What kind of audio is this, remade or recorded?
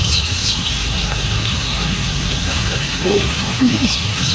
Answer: remade